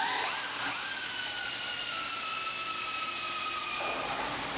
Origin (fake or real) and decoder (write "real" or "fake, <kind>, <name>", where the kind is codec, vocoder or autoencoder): real